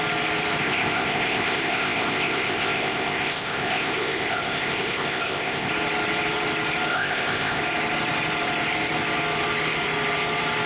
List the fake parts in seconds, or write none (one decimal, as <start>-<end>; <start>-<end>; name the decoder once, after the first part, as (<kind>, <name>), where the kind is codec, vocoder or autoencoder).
0.6-5.7 (codec, ZipCodec); 6.9-7.6